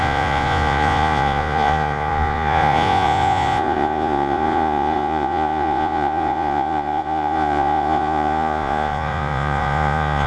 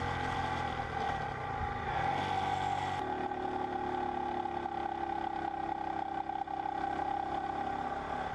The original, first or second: second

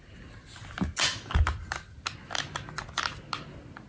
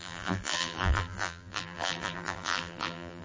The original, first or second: first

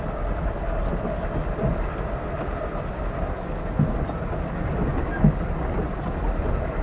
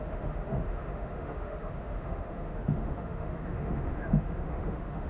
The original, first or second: first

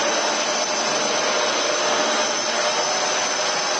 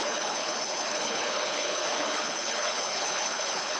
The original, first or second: first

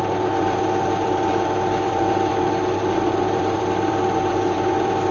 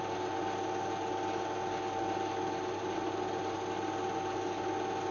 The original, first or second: second